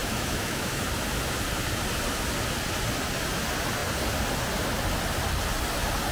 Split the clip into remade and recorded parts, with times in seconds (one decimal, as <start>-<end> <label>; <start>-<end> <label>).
0.0-0.8 remade; 0.8-6.1 recorded